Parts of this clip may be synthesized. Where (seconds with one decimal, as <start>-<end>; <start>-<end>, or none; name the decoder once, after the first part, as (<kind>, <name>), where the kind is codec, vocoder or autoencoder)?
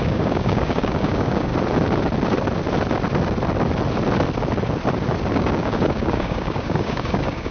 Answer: 0.0-1.5 (codec, DAC); 5.3-7.5